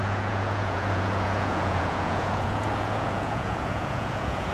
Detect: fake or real fake